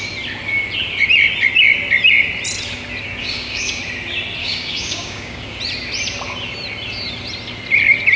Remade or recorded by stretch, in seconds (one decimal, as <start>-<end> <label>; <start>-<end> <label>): 0.0-3.2 recorded; 3.2-3.8 remade; 3.8-4.4 recorded; 4.4-5.6 remade; 5.6-8.2 recorded